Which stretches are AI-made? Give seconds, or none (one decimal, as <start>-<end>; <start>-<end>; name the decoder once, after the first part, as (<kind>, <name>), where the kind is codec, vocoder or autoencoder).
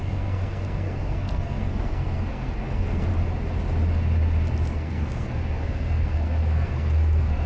0.0-3.1 (codec, SNAC); 4.7-7.5